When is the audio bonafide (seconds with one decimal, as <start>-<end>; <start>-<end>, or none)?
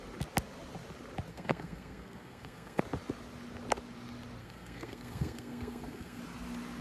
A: 0.0-1.3; 2.8-4.4; 6.2-6.8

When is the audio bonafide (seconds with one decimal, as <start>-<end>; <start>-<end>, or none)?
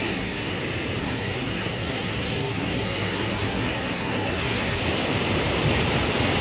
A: 0.6-1.0; 4.8-6.4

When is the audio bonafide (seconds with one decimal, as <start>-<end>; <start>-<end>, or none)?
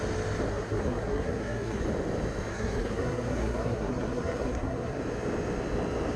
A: 0.0-0.5; 1.8-2.5; 5.0-6.2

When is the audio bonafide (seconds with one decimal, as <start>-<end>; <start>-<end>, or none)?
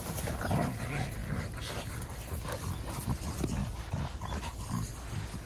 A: 0.0-5.5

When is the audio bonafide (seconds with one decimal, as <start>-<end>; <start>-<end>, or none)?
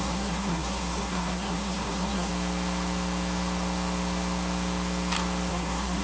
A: 2.3-5.5